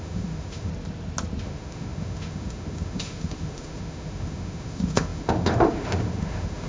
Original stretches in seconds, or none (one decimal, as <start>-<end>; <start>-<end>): 0.7-1.4